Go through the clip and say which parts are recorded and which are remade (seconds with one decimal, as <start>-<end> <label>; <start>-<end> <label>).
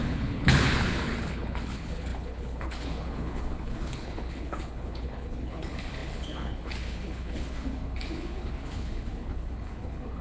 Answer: 0.0-10.2 remade